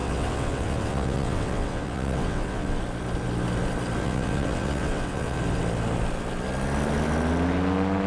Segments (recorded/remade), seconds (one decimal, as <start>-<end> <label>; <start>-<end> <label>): 0.0-2.8 remade; 2.8-4.0 recorded; 4.0-5.4 remade; 5.4-8.1 recorded